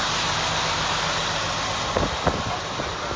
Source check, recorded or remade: recorded